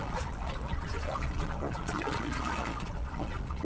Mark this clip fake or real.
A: fake